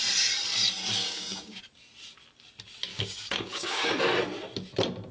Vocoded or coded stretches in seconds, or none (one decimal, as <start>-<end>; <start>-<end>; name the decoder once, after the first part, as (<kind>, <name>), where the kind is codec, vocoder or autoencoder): 1.0-1.6 (codec, DAC); 2.9-3.9